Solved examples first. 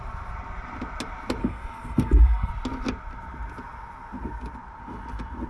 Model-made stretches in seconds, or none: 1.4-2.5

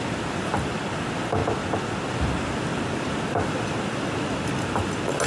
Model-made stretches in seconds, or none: none

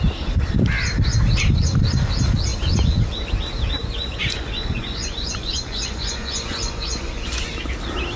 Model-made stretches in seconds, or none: 3.8-7.5

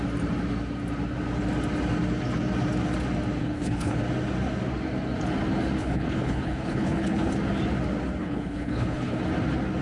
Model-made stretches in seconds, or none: 3.4-4.0; 5.8-7.3; 8.2-9.2

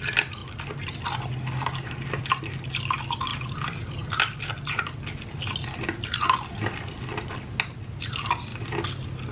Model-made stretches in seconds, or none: none

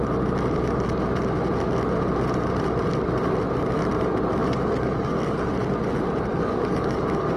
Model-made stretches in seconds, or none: 4.4-5.5; 6.3-7.4

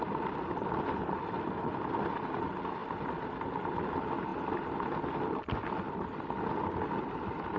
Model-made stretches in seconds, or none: none